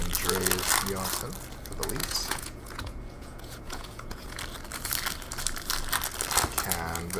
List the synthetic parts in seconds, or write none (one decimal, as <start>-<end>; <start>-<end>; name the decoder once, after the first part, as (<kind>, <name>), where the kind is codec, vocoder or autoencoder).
2.0-4.4 (vocoder, Vocos)